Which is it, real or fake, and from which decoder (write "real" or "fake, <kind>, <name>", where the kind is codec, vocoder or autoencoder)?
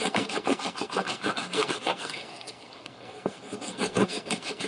fake, codec, SNAC